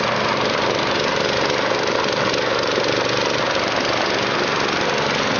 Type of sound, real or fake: real